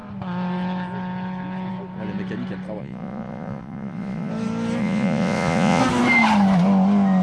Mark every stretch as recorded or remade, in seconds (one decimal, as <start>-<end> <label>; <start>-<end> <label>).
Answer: 0.0-2.8 recorded; 2.8-4.3 remade; 4.3-4.8 recorded; 4.8-5.8 remade; 5.8-7.2 recorded